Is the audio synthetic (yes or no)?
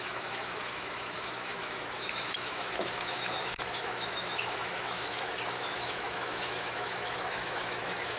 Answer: yes